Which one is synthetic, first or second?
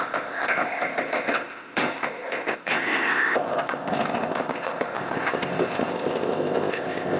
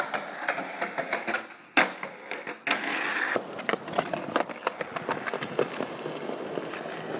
first